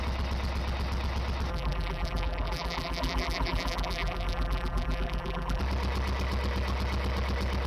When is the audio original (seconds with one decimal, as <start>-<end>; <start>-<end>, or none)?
0.0-1.5; 5.6-7.7

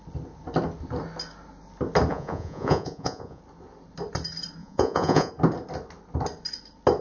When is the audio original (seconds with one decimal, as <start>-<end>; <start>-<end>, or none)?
0.0-2.1; 3.4-4.6; 5.3-7.0